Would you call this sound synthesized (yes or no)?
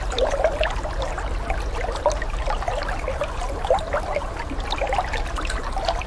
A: no